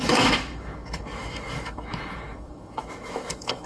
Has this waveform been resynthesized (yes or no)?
yes